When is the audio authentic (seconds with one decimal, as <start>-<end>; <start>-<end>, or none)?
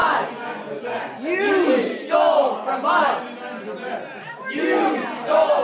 0.7-5.6